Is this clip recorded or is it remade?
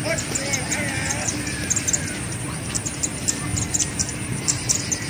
recorded